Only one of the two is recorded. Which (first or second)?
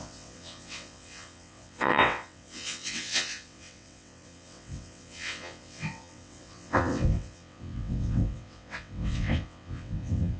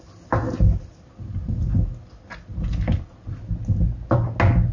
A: second